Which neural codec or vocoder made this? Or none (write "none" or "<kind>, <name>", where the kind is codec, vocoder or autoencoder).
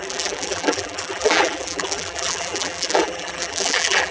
vocoder, BigVGAN v2